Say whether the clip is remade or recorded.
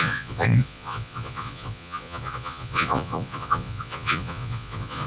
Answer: remade